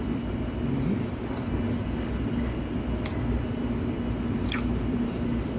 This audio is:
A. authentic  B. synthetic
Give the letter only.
A